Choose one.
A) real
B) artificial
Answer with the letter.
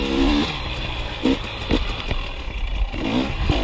A